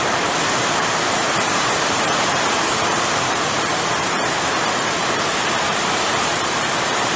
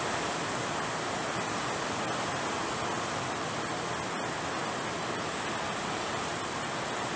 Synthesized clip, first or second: first